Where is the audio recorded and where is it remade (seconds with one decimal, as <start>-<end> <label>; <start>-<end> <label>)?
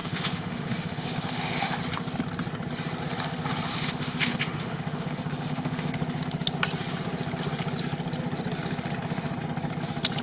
0.0-1.8 remade; 1.8-3.7 recorded; 3.7-5.9 remade; 5.9-10.2 recorded